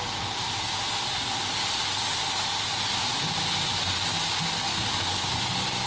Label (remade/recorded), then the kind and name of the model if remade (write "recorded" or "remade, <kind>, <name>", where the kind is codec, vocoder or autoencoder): recorded